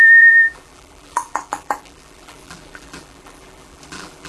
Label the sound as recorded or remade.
remade